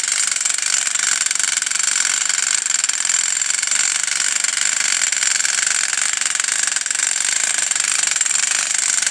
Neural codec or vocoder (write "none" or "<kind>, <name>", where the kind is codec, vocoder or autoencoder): none